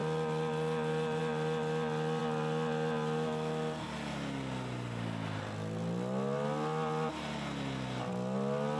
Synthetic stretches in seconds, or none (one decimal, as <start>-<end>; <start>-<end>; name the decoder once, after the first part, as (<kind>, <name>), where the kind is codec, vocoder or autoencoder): none